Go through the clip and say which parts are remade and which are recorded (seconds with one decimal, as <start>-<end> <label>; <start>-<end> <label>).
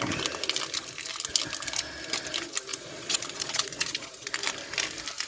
0.0-2.7 recorded; 2.7-4.3 remade; 4.3-5.3 recorded